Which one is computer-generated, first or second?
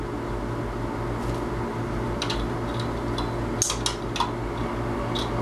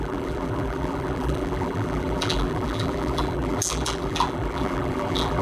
second